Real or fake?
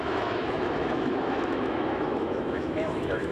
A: fake